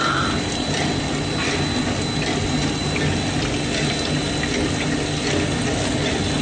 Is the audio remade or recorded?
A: recorded